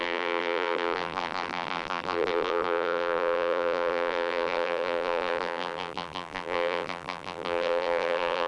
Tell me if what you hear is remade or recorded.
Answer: remade